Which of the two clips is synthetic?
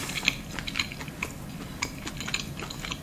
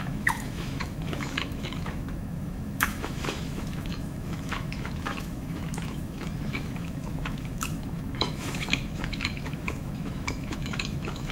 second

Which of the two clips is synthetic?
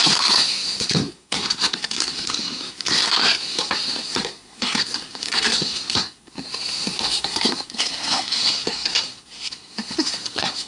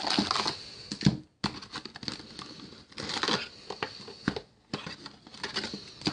first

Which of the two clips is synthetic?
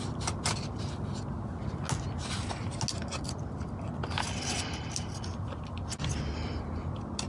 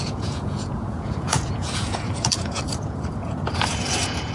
second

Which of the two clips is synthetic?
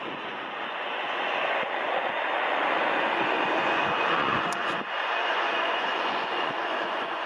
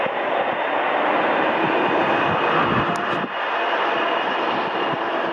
first